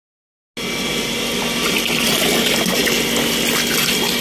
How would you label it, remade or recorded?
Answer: recorded